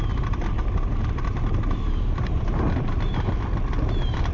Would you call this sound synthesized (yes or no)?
no